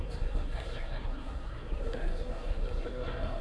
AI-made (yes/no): yes